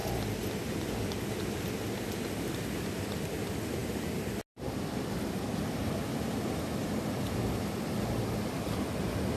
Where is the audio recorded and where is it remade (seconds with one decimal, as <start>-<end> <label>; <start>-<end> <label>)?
0.0-9.4 recorded